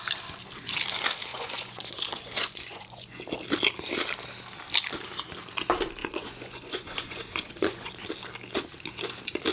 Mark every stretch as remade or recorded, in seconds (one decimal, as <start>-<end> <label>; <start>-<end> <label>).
0.0-1.3 recorded; 1.3-3.2 remade; 3.2-6.0 recorded; 6.0-7.9 remade; 7.9-9.5 recorded